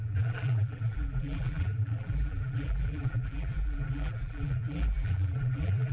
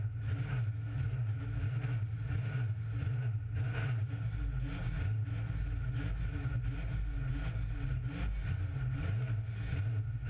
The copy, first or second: first